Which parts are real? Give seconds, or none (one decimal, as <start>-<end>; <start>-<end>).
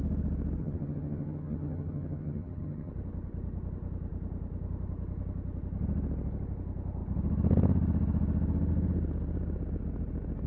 0.0-0.6; 2.9-10.5